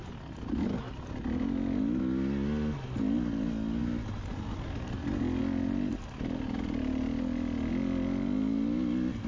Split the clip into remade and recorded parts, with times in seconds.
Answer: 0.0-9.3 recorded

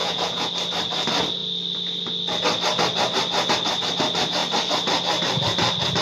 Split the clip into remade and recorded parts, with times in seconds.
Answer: 0.0-0.5 remade; 0.5-6.0 recorded

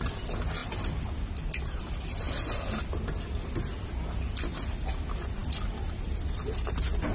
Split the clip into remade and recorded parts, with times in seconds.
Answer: 0.0-7.1 recorded

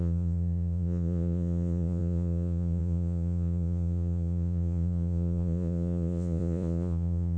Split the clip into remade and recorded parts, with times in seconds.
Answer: 0.0-7.4 remade